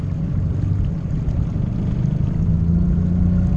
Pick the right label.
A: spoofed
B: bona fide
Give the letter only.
B